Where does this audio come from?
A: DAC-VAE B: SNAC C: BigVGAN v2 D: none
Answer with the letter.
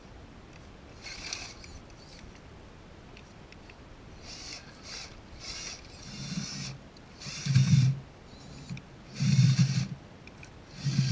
D